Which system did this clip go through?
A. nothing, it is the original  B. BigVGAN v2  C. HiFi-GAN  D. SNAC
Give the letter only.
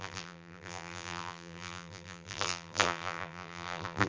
B